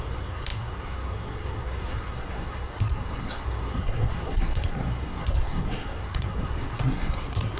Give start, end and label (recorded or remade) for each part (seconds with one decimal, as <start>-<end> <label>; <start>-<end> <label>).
0.0-7.6 remade